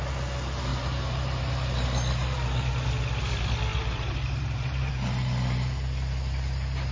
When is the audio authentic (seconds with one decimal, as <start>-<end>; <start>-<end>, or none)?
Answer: 0.0-0.7; 1.5-3.7; 4.9-6.9